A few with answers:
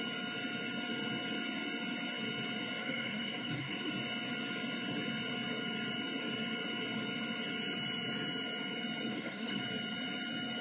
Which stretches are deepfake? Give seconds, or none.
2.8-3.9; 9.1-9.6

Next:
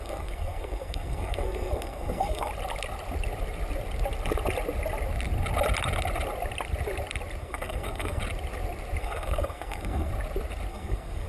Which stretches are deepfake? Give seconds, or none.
0.0-2.5; 7.4-8.2; 9.0-10.1; 10.7-11.3

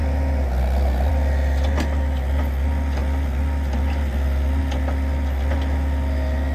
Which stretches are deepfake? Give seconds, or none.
none

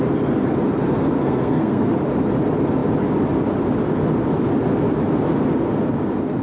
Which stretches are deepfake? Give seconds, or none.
1.2-1.9

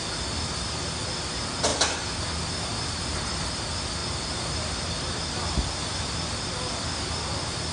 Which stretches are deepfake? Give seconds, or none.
none

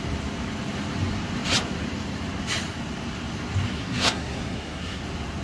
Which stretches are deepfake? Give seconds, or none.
3.7-5.0

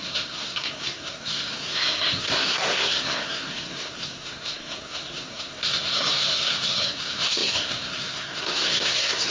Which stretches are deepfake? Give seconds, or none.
0.0-9.3